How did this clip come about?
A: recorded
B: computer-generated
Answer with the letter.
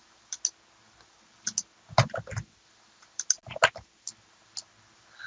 A